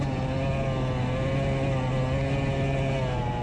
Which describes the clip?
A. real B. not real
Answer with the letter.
A